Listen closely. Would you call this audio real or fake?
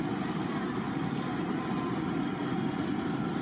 real